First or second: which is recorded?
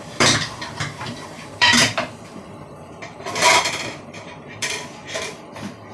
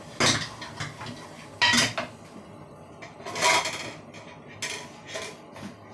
second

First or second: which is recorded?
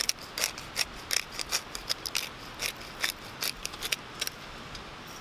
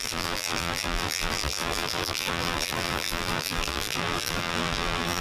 first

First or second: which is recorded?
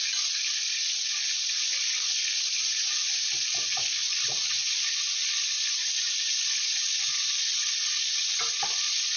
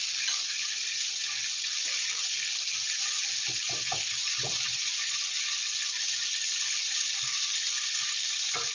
first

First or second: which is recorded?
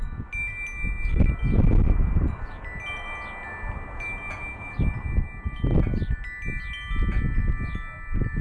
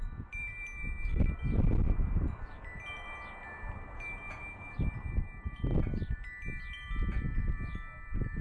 first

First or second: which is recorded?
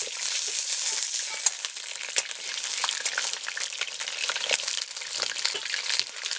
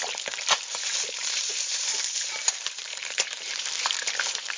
first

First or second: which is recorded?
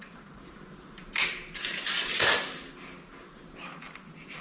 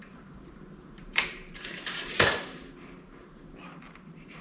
first